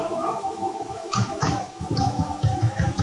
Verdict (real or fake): fake